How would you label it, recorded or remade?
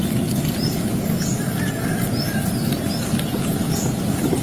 recorded